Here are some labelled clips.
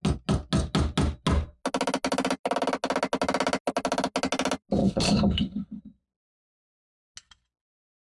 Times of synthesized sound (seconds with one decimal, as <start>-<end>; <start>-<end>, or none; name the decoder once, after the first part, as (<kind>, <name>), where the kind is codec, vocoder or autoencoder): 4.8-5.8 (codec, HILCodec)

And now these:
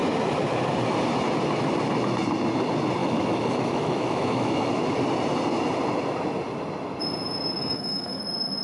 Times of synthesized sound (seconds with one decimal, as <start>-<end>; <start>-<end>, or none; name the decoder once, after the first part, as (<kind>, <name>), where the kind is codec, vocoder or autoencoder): 3.0-4.7 (autoencoder, DAC-VAE); 7.6-8.2

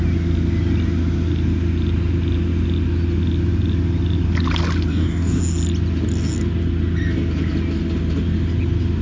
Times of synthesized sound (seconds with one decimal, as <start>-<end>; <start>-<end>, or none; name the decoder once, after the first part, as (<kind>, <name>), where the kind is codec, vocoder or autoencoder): 4.9-5.4 (codec, DAC)

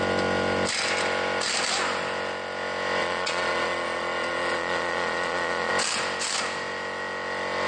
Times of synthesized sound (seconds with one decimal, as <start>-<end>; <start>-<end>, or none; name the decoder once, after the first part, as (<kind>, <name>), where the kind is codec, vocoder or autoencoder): 3.0-5.7 (vocoder, Vocos)

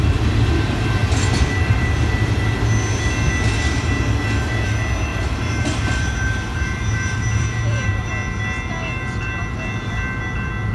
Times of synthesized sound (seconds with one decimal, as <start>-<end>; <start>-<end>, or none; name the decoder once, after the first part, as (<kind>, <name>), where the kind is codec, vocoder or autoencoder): 5.1-6.1 (vocoder, BigVGAN v2); 6.5-8.1

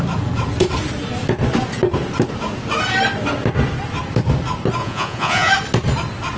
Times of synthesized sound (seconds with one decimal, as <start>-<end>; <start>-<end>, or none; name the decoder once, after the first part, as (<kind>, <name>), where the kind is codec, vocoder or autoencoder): 4.8-5.5 (vocoder, Vocos)

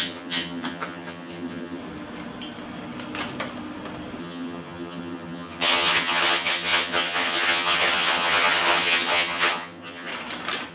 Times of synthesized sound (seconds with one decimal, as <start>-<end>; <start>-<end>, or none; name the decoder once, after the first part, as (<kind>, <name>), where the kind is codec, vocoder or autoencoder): 0.0-1.8 (vocoder, HiFi-GAN); 4.2-10.1